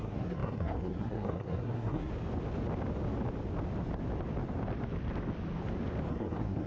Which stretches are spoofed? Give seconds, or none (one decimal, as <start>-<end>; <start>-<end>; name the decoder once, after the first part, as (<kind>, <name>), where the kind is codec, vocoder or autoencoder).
0.0-2.1 (codec, SNAC); 6.1-6.7